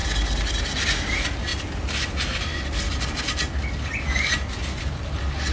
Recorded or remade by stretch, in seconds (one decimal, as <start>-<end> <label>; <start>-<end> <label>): 0.0-5.5 recorded